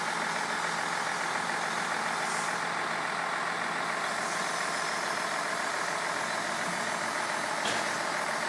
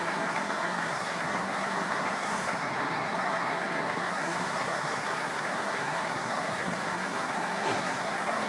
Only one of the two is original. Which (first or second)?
first